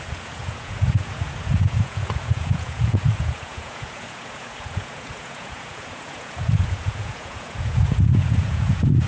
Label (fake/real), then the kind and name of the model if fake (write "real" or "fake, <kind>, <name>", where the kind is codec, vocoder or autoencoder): fake, vocoder, Vocos